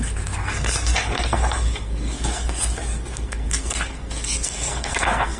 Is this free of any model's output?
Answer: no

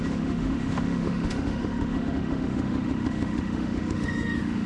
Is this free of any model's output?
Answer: no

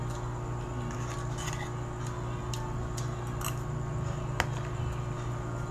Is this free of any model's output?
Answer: yes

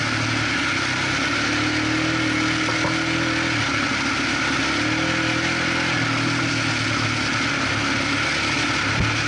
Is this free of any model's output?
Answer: yes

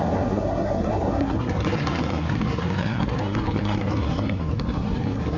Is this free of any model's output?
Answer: no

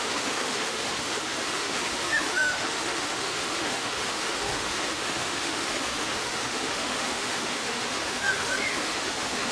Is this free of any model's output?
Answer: no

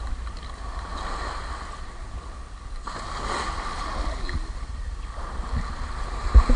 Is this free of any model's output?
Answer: yes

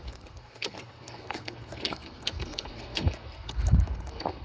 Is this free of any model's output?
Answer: no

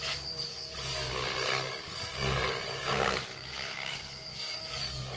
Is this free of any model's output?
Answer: no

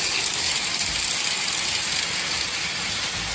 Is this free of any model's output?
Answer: yes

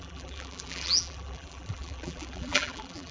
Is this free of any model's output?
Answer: no